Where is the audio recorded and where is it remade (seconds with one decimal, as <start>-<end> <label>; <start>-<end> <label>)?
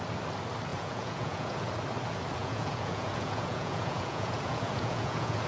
0.0-0.7 recorded; 0.7-1.7 remade; 1.7-2.4 recorded; 2.4-5.5 remade